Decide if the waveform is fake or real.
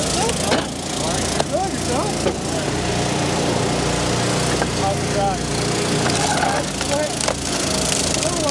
real